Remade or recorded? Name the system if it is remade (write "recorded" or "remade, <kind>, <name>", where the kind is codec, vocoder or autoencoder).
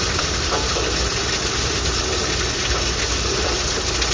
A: recorded